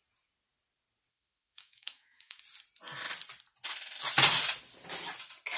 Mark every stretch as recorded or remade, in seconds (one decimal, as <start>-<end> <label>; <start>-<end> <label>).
0.0-1.1 recorded; 1.1-2.4 remade; 2.4-5.6 recorded